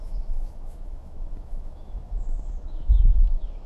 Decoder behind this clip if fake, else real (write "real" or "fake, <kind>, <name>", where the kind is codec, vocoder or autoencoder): fake, autoencoder, DAC-VAE